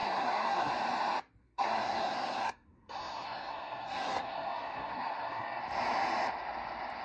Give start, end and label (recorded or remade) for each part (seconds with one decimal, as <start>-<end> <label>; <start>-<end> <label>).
0.0-0.7 remade; 0.7-1.4 recorded; 1.4-5.6 remade; 5.6-7.0 recorded